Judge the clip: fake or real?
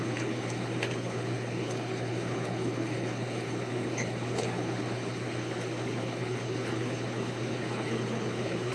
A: fake